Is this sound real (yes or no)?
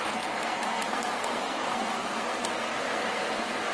no